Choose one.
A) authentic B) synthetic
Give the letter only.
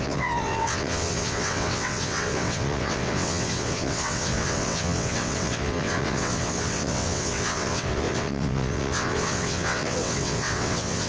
B